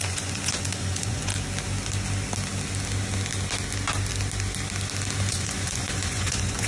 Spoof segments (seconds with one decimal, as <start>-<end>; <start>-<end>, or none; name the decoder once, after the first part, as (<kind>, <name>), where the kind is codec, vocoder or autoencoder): 0.0-1.3 (vocoder, Vocos); 5.3-6.7